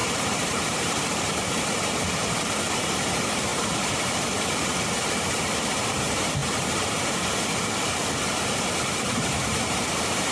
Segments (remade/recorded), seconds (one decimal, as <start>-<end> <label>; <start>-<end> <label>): 0.0-2.0 remade; 2.0-2.9 recorded; 2.9-10.3 remade